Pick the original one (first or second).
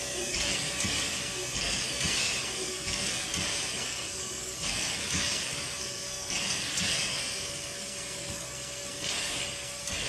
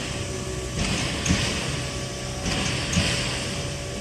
second